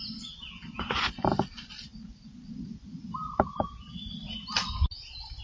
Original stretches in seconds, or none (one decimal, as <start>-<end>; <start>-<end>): 0.0-5.4